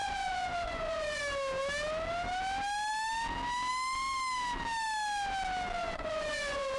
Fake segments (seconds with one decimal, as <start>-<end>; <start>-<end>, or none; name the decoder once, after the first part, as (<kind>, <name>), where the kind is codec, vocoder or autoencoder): 0.0-1.2 (vocoder, Vocos); 5.8-6.8

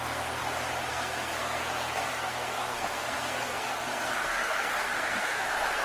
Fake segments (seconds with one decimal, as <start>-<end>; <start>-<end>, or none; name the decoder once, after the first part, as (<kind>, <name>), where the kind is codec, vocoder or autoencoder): 0.0-0.4 (codec, SNAC); 0.9-5.8

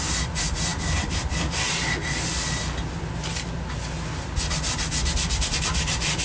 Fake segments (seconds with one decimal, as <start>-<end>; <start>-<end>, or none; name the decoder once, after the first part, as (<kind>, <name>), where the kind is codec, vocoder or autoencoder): none

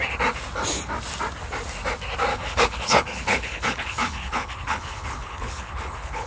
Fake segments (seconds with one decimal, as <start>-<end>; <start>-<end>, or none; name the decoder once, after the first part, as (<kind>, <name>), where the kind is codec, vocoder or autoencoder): 2.3-6.3 (codec, HILCodec)

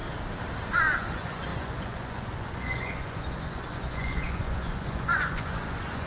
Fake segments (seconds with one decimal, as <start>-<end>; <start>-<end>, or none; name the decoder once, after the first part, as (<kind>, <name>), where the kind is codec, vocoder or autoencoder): 0.7-6.1 (vocoder, Vocos)

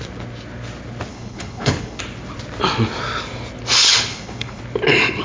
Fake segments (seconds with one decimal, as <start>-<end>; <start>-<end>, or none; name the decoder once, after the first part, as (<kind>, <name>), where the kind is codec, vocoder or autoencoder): 1.1-2.0 (codec, HILCodec); 4.1-4.6

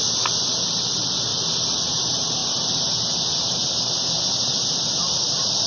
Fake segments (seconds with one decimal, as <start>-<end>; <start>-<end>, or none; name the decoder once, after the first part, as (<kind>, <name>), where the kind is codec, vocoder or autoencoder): 0.0-1.3 (vocoder, BigVGAN v2); 1.9-2.4; 5.3-5.7